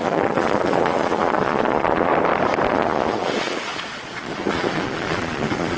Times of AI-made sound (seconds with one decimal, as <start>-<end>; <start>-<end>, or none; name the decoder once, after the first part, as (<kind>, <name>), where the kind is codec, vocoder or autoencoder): 0.0-2.1 (vocoder, Vocos); 2.7-5.8